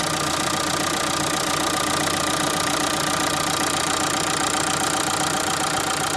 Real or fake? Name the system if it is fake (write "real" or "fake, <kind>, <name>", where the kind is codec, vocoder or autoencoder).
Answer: real